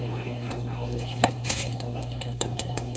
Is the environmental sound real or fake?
fake